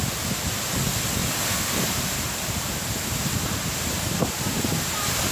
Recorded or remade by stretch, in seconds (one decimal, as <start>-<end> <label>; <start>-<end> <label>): 0.0-1.2 recorded; 1.2-4.4 remade; 4.4-5.3 recorded